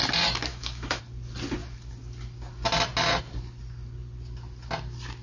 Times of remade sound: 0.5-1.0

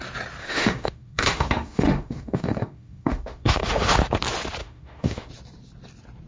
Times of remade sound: 0.4-4.0; 4.6-5.3

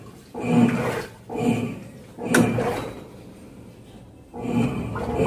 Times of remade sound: none

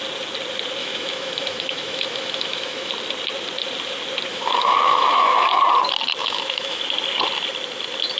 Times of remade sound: 0.8-2.9; 4.3-5.6; 6.2-6.8

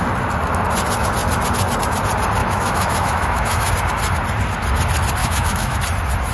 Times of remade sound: 2.4-3.7; 5.2-5.8

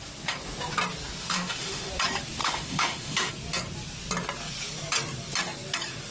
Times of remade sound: 1.2-1.9; 2.4-3.3